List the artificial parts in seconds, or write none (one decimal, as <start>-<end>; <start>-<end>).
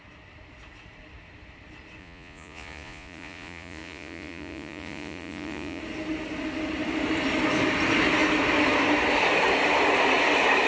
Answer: 2.0-5.8